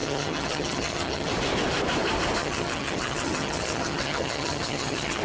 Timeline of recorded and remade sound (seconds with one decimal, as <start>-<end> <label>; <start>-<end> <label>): 0.0-1.3 remade; 1.3-2.4 recorded; 2.4-5.2 remade